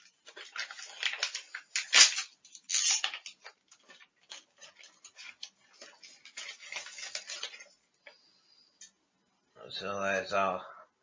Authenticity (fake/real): real